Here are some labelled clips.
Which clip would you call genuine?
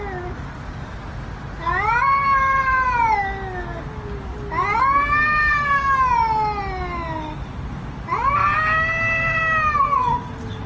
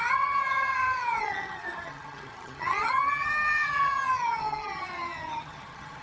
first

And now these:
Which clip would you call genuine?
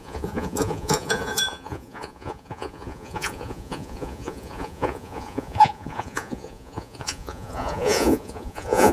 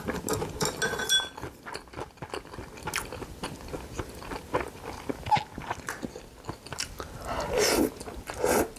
second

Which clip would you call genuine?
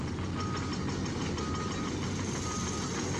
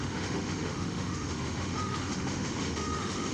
first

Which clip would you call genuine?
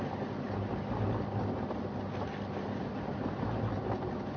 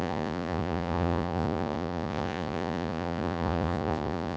first